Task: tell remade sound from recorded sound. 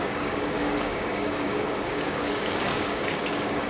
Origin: remade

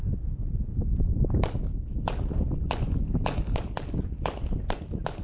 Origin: recorded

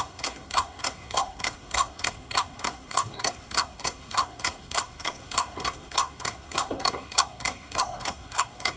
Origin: remade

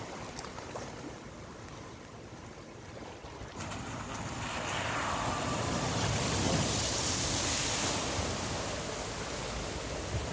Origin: recorded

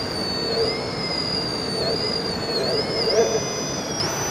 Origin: recorded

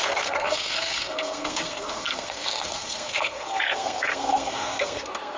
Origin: remade